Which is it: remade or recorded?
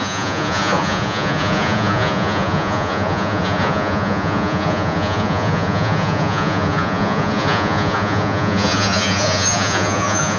remade